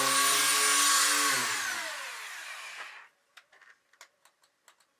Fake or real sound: real